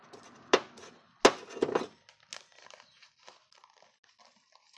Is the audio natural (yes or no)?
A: yes